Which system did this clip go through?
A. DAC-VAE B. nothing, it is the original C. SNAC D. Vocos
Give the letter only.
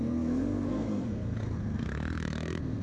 C